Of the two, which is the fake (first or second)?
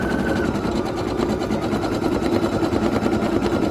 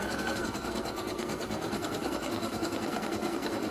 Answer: second